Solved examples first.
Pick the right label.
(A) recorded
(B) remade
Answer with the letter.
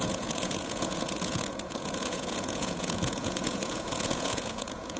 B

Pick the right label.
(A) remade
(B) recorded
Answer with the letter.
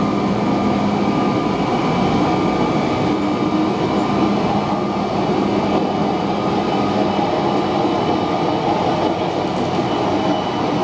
B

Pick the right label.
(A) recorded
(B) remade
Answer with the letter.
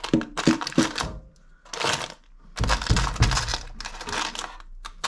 A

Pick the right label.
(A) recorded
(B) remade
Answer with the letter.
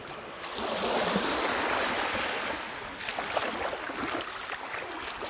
A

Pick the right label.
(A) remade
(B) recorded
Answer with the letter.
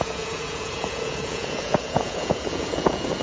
A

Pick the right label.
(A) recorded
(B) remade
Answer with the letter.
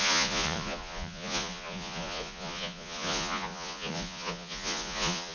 B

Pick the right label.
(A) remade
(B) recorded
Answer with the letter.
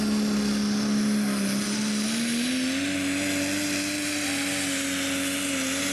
B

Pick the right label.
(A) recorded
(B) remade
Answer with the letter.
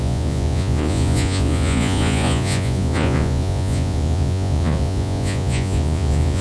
B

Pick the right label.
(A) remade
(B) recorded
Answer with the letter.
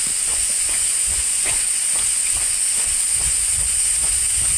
A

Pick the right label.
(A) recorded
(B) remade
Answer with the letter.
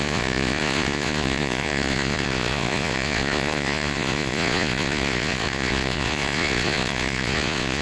B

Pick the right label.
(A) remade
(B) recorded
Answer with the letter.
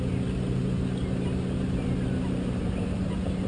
B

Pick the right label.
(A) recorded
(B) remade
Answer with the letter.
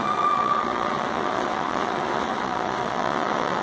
B